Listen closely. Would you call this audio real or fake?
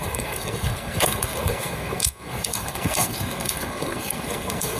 fake